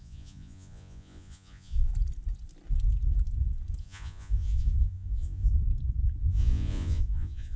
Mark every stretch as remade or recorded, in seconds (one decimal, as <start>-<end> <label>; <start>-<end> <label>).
0.0-1.9 remade; 1.9-3.8 recorded; 3.8-5.6 remade; 5.6-6.2 recorded; 6.2-7.6 remade